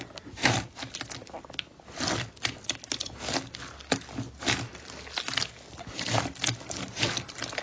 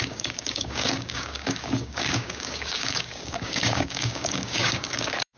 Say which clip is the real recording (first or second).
first